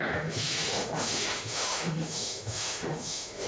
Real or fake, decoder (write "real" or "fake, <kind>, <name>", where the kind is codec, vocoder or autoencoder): fake, autoencoder, DAC-VAE